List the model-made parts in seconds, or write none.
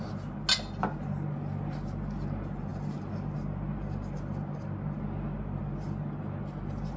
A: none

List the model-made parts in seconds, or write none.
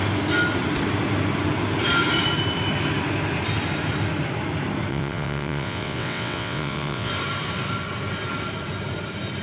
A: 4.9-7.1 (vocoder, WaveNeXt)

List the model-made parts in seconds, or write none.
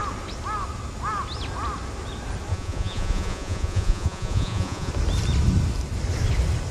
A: 2.5-4.9 (vocoder, Vocos)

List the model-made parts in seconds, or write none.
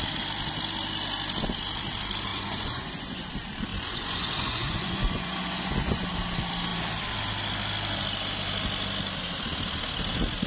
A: 2.3-3.3 (vocoder, Vocos); 3.7-6.1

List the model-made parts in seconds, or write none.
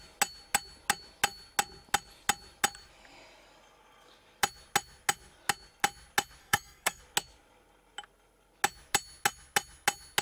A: 6.4-7.0 (codec, SNAC)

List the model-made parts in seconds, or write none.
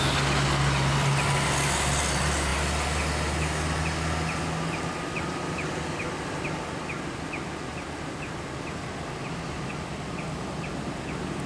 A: none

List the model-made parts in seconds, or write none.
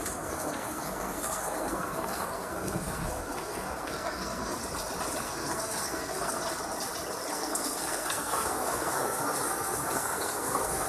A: 0.0-4.6 (codec, SNAC); 5.2-6.4; 7.3-10.9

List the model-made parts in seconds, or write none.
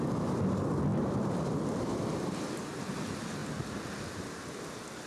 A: 0.9-2.5 (vocoder, BigVGAN v2)